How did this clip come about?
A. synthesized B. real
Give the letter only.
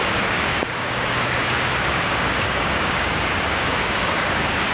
A